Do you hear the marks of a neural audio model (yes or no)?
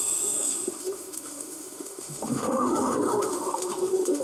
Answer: yes